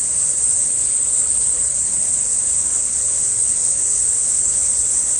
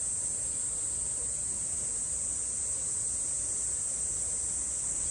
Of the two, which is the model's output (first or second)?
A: first